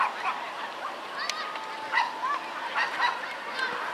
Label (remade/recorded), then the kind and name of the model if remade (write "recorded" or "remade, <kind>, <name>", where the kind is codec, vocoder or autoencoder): recorded